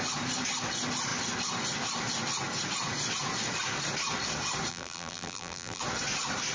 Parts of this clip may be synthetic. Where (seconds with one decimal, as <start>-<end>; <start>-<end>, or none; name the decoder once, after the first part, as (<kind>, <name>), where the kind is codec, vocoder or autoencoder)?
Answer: 4.7-5.8 (vocoder, BigVGAN v2)